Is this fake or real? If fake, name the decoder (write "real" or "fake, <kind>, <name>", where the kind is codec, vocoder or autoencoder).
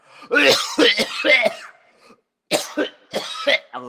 real